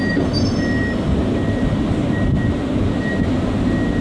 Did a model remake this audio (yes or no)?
no